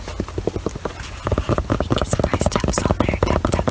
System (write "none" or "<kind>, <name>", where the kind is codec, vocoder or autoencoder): none